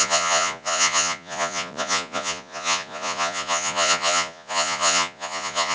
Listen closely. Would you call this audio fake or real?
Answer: fake